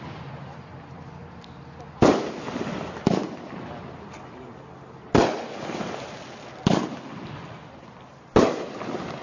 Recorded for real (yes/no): yes